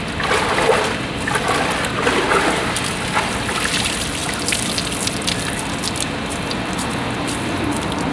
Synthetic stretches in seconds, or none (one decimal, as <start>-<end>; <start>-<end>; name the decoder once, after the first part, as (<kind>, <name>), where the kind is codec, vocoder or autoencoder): none

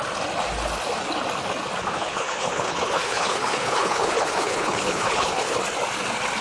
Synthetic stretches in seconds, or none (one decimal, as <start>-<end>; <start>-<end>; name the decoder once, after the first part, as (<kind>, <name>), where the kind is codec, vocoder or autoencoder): 1.8-5.6 (codec, HILCodec)

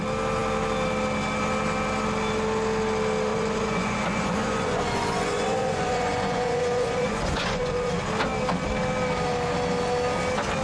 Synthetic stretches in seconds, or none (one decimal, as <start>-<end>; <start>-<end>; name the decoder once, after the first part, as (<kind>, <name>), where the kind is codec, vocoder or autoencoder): 3.3-7.9 (vocoder, Vocos)

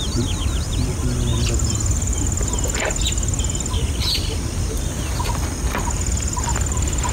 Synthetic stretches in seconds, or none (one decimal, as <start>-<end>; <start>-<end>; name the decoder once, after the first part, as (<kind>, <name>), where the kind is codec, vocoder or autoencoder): 1.3-2.2 (vocoder, BigVGAN v2); 6.5-7.1